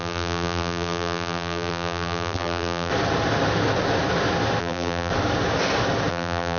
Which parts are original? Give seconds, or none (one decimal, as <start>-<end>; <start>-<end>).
2.9-4.6; 5.1-6.1